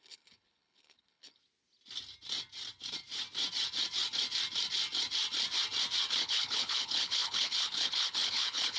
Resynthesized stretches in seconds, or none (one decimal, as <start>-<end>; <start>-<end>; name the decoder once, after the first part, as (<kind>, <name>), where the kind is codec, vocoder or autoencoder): 0.0-1.4 (codec, HILCodec); 6.1-8.8